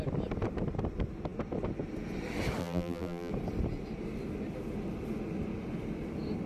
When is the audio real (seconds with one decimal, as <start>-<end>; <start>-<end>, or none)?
0.0-2.6; 3.3-6.5